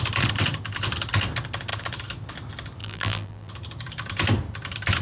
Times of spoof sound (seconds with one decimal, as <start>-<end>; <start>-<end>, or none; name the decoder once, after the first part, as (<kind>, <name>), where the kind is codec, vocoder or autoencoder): 2.8-3.5 (vocoder, BigVGAN v2)